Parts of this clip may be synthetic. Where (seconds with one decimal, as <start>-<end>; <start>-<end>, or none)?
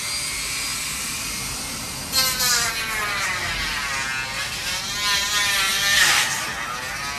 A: 0.7-2.8; 5.7-6.2